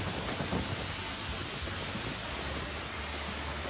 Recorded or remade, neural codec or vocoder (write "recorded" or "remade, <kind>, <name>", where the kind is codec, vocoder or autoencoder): recorded